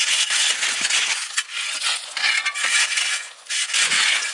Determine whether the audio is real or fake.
fake